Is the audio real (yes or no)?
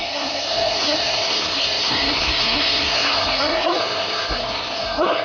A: no